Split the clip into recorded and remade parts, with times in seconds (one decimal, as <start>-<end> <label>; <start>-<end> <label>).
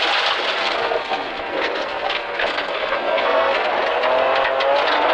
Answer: 0.0-0.6 recorded; 0.6-3.7 remade; 3.7-5.1 recorded